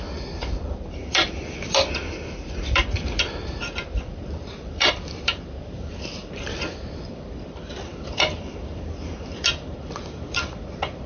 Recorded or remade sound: remade